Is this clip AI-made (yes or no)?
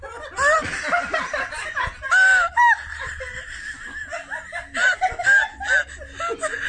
no